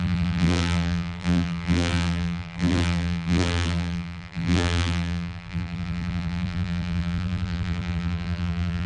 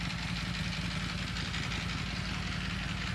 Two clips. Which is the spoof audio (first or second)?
first